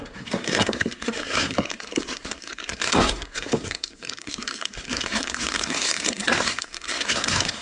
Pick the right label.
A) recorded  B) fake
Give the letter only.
B